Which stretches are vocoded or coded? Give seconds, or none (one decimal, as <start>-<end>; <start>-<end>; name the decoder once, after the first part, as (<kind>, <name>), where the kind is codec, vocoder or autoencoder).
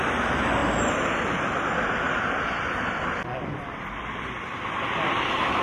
none